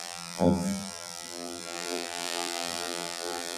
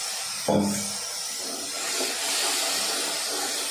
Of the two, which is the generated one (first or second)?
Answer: first